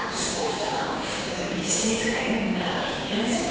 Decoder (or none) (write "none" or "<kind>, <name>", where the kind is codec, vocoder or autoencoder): codec, DAC